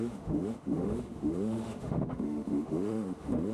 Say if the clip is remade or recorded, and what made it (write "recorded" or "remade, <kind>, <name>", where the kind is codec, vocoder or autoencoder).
remade, autoencoder, DAC-VAE